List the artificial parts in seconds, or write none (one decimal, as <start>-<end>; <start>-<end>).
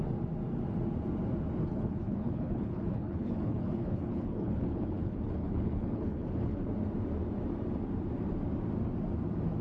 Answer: 1.7-6.7